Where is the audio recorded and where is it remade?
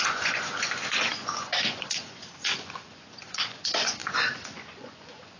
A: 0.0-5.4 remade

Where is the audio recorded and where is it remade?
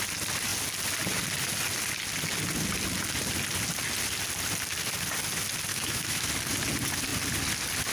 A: 0.0-5.7 recorded; 5.7-6.3 remade; 6.3-7.9 recorded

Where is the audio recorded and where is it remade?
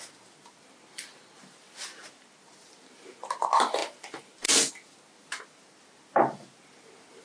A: 0.0-7.2 recorded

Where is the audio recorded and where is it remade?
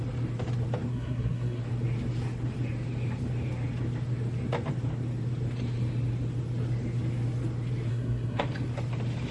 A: 0.0-0.9 recorded; 0.9-1.6 remade; 1.6-7.9 recorded; 7.9-8.4 remade; 8.4-9.3 recorded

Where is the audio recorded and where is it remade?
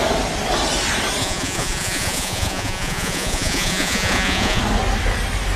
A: 0.0-1.2 recorded; 1.2-4.6 remade; 4.6-5.6 recorded